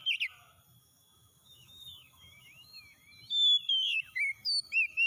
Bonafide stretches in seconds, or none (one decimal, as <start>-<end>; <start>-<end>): 0.0-0.8; 3.0-3.7